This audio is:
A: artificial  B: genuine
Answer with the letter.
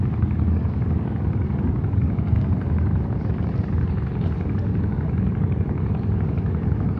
A